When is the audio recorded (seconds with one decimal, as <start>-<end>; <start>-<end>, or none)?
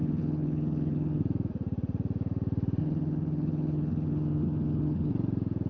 1.2-2.8; 5.1-5.7